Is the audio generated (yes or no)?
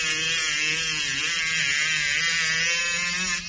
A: no